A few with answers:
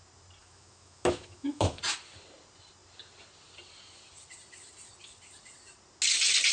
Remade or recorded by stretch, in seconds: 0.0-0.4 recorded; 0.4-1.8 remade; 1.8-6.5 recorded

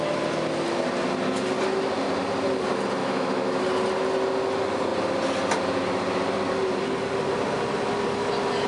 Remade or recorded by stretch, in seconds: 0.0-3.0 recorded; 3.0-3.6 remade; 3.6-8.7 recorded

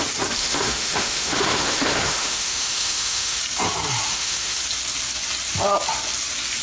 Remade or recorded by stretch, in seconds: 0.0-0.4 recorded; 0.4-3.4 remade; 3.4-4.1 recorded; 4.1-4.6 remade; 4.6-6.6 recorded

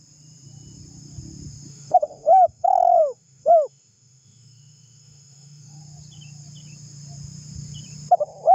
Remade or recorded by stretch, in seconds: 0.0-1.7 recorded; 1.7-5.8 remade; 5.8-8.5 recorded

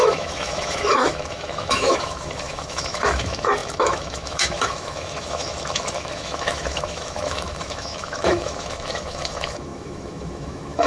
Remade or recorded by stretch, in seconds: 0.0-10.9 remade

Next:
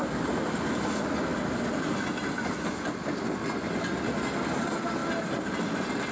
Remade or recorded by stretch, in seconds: 0.0-6.1 recorded

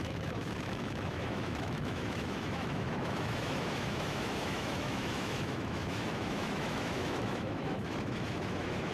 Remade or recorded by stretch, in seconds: 0.0-8.9 remade

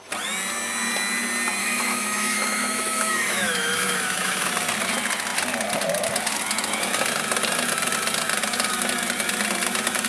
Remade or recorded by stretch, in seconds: 0.0-1.6 recorded; 1.6-4.5 remade; 4.5-10.1 recorded